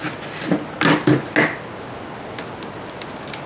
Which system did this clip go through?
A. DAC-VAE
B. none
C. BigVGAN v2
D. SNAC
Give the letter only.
B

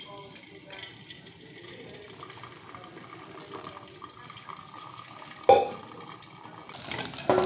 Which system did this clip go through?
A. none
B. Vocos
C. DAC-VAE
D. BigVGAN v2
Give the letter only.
A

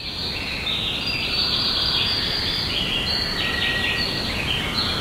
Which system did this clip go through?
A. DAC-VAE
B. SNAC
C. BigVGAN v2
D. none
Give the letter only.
D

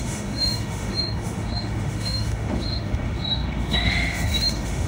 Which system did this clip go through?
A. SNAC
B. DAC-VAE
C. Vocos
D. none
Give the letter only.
B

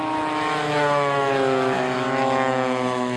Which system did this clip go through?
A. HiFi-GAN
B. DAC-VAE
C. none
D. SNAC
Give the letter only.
B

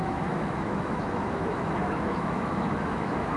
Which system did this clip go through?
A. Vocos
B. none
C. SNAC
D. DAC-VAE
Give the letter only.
D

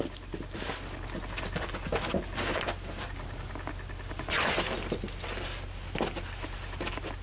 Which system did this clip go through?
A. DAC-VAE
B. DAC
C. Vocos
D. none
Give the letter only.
D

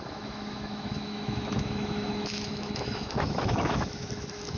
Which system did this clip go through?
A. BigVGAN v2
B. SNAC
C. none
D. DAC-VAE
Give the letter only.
D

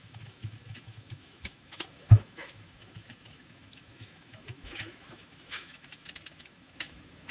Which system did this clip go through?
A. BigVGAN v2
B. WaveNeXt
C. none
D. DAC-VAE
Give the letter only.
D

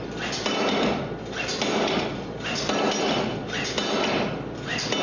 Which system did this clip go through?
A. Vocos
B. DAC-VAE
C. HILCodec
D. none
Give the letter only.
D